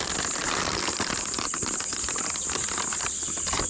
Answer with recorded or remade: recorded